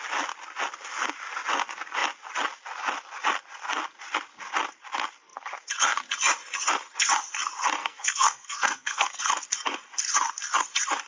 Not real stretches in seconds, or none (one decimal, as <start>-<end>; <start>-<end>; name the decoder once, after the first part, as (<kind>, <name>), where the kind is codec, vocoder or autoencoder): 7.8-9.2 (codec, SNAC)